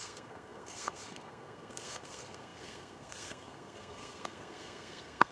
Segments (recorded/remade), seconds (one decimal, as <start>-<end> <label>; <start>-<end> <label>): 0.0-5.3 remade